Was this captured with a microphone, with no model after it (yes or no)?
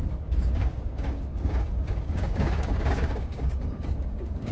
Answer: no